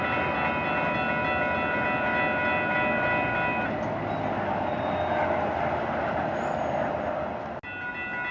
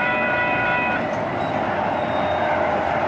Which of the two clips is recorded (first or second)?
first